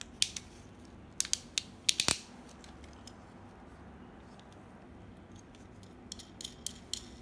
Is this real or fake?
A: real